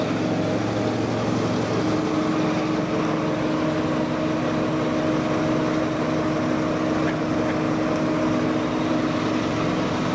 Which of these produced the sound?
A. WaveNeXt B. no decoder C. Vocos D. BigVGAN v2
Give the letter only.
B